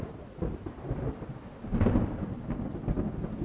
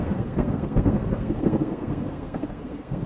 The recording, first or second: first